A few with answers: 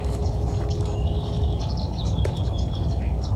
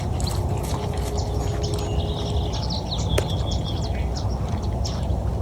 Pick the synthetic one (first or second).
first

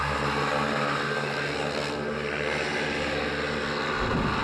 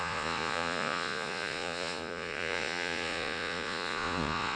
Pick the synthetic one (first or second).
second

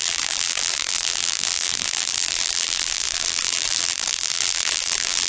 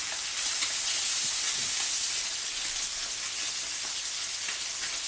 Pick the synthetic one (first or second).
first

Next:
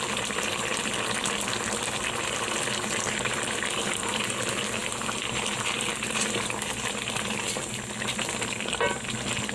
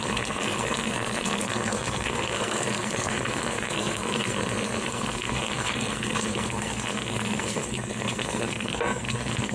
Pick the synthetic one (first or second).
second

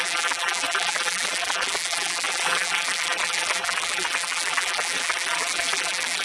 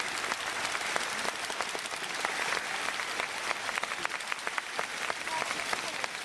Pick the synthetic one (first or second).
first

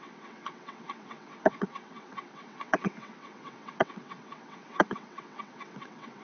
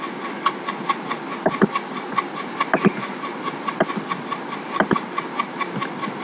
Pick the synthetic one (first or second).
first